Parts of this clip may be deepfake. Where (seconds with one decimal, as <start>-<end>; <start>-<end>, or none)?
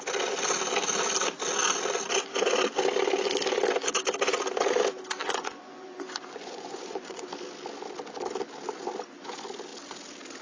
5.2-7.2